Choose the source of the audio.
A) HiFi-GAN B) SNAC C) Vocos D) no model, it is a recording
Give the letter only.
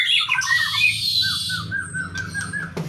D